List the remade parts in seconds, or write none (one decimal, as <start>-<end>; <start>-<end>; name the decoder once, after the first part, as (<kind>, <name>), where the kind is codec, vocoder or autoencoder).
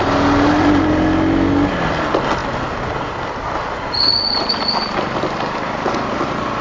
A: none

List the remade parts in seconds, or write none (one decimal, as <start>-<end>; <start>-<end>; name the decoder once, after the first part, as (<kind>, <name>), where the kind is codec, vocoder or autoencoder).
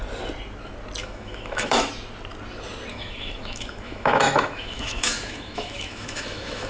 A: 1.0-1.9 (autoencoder, DAC-VAE); 2.9-6.7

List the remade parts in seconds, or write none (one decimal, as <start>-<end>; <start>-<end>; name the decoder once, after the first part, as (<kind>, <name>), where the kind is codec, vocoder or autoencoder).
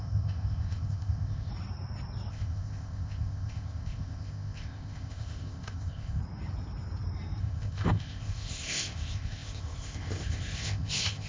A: 0.0-1.5 (codec, ZipCodec); 2.3-6.2; 7.4-11.3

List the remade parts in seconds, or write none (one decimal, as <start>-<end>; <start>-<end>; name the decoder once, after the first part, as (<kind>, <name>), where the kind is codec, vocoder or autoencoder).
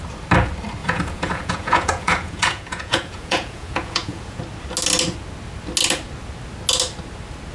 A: 0.8-4.4 (vocoder, Vocos)